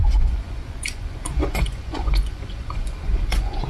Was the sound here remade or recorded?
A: remade